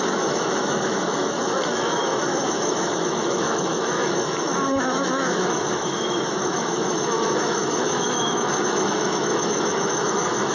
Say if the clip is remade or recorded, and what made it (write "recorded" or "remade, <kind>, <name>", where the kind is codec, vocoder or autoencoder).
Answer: remade, autoencoder, DAC-VAE